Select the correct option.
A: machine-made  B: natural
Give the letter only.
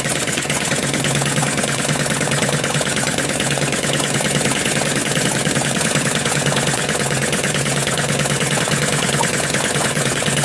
A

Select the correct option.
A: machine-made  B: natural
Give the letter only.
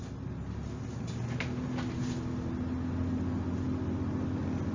B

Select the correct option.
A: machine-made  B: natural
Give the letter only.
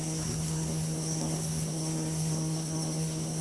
A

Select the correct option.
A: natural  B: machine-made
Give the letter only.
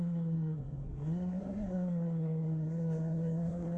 B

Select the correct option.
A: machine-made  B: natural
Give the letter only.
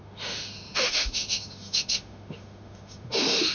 A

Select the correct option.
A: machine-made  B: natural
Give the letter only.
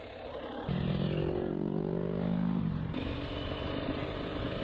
B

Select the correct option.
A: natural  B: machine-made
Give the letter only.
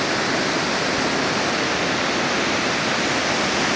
A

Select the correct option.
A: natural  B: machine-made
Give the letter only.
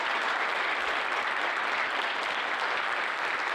B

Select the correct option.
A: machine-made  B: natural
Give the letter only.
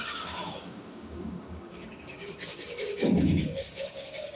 A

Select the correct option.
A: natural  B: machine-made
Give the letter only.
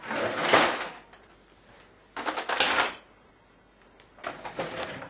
A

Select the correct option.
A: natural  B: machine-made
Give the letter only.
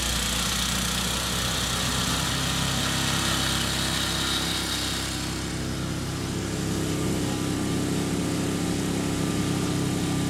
A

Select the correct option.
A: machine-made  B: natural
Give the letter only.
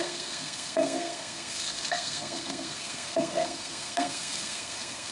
A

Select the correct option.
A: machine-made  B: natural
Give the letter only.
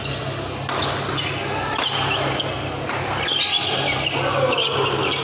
B